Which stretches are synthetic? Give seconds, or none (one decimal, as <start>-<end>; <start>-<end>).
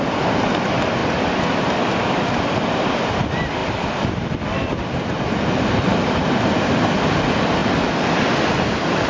3.6-4.9; 5.9-6.9